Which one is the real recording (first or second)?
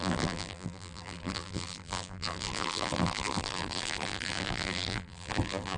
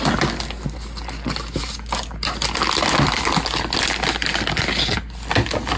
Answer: second